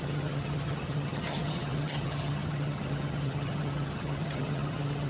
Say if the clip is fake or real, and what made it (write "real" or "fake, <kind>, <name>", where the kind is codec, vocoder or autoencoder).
fake, vocoder, HiFi-GAN